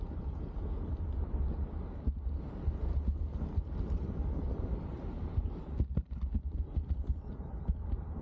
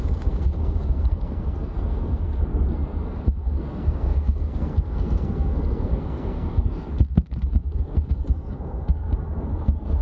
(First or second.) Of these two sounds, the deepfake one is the second